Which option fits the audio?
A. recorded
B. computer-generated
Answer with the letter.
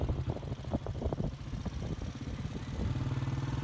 A